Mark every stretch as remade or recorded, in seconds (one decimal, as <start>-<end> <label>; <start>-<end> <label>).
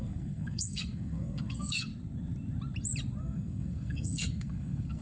0.0-1.9 remade; 1.9-3.2 recorded; 3.2-5.0 remade